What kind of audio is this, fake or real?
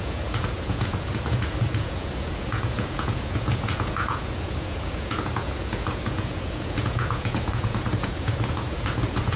fake